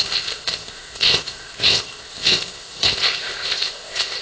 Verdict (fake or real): fake